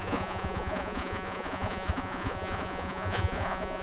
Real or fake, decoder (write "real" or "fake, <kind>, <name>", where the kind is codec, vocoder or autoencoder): fake, vocoder, Vocos